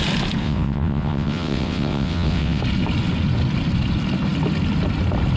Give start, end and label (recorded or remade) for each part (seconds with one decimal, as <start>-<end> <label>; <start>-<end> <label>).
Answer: 0.0-0.4 recorded; 0.4-2.6 remade; 2.6-5.4 recorded